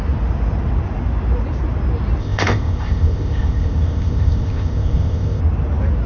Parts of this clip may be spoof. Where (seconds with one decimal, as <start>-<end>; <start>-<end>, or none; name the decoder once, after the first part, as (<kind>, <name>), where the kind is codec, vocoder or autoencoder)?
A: 2.2-5.4 (codec, ZipCodec)